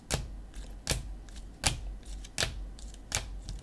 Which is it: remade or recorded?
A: recorded